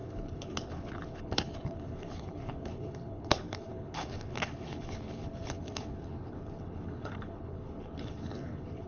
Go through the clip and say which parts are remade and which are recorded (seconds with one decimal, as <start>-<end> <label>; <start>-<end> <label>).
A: 0.0-8.9 remade